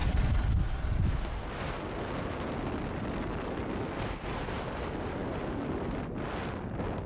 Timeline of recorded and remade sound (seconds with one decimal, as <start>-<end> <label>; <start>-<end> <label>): 0.0-7.1 recorded